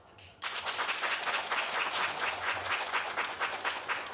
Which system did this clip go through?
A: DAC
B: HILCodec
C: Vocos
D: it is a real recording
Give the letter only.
C